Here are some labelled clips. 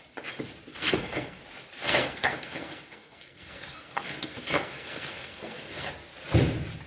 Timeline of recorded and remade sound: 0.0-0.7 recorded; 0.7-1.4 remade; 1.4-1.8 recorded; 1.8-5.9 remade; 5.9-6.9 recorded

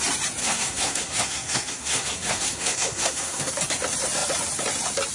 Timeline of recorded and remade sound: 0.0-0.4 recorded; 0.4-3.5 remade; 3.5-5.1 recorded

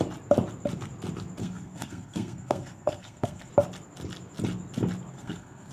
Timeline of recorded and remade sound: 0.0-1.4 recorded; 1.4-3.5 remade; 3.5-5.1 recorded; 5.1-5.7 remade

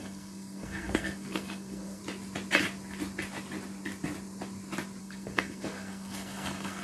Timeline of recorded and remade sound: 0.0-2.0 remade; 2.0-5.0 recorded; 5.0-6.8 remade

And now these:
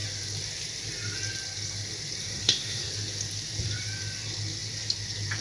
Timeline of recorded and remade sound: 0.0-2.2 recorded; 2.2-2.9 remade; 2.9-5.4 recorded

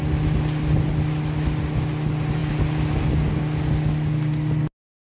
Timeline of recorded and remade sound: 0.0-5.0 recorded